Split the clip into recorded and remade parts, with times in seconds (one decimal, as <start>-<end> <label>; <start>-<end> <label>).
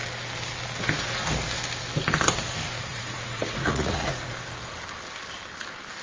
0.0-2.9 recorded; 2.9-4.3 remade; 4.3-6.0 recorded